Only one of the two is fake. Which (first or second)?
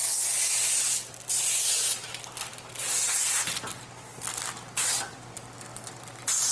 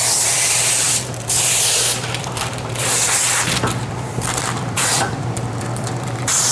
second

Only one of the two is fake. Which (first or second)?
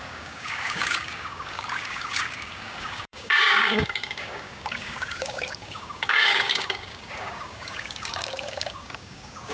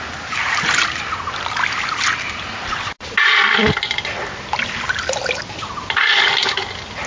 first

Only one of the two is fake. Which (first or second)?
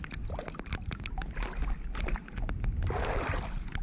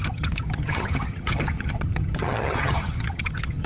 second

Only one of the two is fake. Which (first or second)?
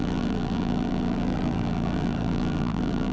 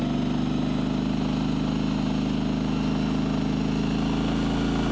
first